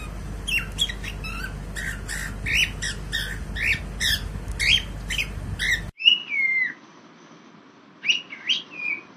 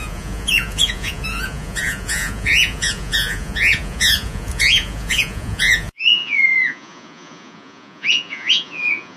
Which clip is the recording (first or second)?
first